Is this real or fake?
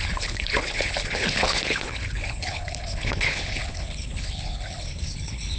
fake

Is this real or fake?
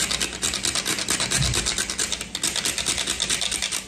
real